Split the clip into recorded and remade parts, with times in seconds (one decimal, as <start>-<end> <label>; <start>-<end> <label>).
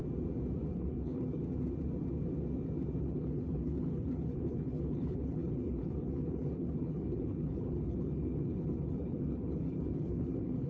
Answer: 0.0-0.7 recorded; 0.7-1.4 remade; 1.4-3.0 recorded; 3.0-10.7 remade